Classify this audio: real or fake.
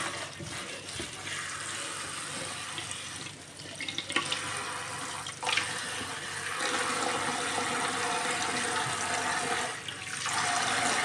real